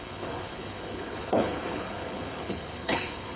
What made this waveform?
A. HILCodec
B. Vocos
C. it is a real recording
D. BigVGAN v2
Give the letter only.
A